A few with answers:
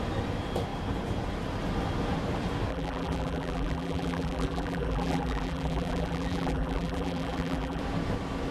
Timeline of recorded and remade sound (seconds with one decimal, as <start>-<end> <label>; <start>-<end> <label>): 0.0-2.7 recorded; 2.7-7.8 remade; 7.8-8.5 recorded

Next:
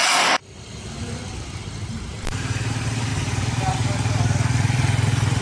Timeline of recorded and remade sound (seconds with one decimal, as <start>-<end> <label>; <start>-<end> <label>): 0.0-1.9 recorded; 1.9-2.6 remade; 2.6-5.4 recorded

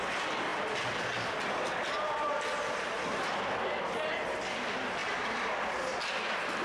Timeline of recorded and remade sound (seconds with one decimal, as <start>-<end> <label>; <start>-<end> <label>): 0.0-0.5 recorded; 0.5-4.1 remade; 4.1-6.6 recorded